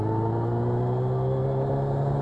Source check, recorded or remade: recorded